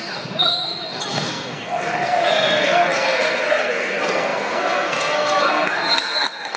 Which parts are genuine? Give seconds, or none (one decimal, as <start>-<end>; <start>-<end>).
none